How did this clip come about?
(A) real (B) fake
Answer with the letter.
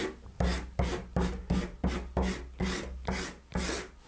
A